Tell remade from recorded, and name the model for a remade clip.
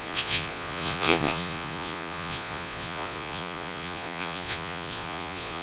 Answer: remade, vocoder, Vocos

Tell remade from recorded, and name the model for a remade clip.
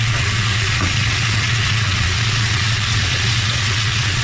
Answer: remade, vocoder, Vocos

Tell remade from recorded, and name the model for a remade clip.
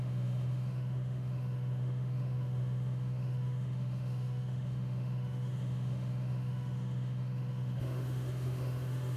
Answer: remade, autoencoder, DAC-VAE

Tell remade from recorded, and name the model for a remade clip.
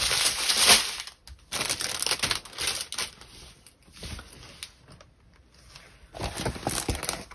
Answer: recorded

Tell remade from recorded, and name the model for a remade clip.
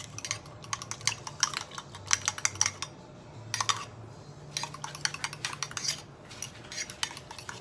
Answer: recorded